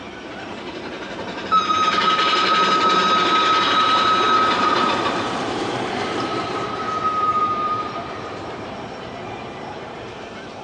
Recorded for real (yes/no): no